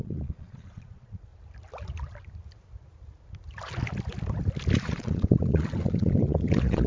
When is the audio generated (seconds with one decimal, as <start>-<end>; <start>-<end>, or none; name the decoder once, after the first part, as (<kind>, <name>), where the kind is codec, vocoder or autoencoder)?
0.0-1.3 (vocoder, Vocos); 4.8-6.9